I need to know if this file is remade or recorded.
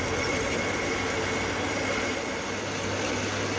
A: recorded